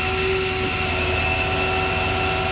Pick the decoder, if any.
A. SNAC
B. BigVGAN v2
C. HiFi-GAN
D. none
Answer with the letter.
D